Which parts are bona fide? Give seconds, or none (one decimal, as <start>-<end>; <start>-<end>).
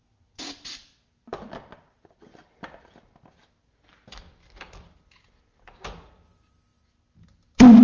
0.0-7.8